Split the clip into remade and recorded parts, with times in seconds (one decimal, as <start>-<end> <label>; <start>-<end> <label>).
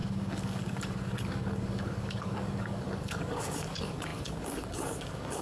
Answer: 0.0-5.4 remade